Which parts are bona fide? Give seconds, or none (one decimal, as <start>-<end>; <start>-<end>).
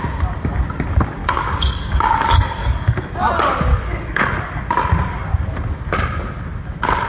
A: 0.0-1.2; 3.3-3.7; 4.4-7.1